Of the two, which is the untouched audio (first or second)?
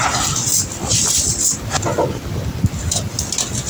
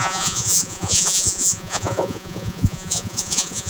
first